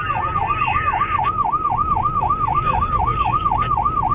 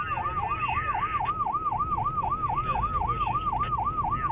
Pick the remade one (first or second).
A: first